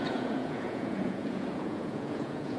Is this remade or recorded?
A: remade